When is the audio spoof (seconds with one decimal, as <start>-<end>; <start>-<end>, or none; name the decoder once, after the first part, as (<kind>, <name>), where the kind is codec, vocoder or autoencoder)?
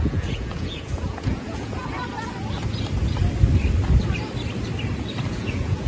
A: 0.0-1.8 (vocoder, Vocos); 5.3-5.9